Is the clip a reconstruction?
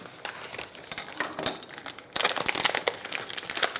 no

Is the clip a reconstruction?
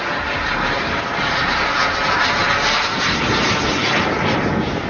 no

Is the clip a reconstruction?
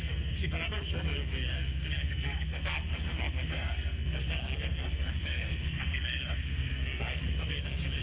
yes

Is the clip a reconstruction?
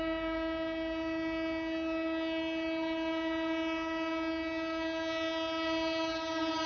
no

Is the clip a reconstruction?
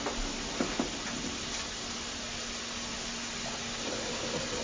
no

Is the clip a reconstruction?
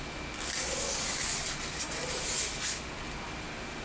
no